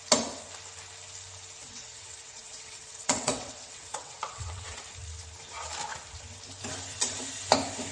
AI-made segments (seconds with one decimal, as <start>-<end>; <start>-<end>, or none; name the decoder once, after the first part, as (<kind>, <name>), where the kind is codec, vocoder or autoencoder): 1.6-4.8 (vocoder, WaveNeXt)